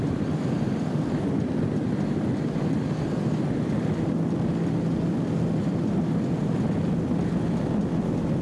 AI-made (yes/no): no